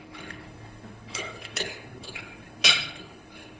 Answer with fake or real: fake